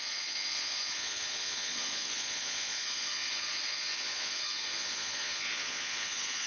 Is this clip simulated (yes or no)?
yes